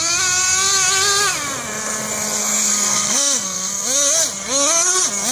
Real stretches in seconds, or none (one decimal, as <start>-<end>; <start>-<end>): 0.0-2.4; 3.7-5.3